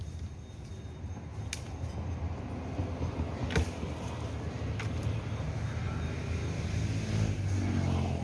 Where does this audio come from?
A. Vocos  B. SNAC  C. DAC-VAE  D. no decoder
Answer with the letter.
D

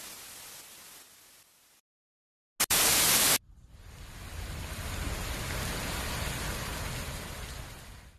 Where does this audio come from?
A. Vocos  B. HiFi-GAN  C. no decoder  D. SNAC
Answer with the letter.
C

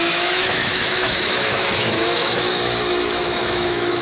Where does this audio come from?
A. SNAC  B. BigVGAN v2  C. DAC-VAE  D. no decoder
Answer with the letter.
C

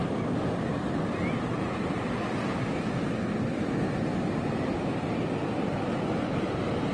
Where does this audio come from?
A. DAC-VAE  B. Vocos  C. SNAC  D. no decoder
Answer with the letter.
D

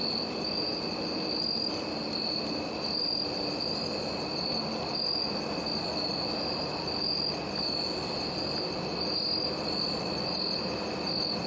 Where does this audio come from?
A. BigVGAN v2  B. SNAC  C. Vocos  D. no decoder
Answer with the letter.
D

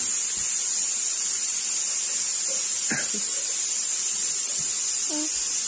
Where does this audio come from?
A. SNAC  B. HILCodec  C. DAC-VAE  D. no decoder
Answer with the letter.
D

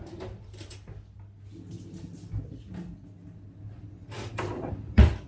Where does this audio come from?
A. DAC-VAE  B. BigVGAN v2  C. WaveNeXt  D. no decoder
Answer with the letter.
D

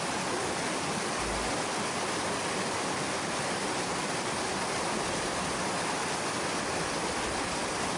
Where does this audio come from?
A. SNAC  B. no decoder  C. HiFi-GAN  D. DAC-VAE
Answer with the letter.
B